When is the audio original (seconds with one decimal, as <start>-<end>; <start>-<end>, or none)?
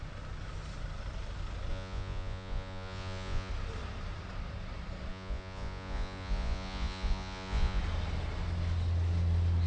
0.0-1.7; 3.5-5.1; 7.8-9.7